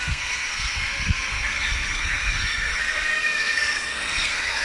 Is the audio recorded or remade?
remade